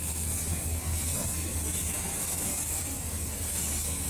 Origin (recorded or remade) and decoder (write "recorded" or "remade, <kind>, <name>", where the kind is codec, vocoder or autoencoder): remade, codec, SNAC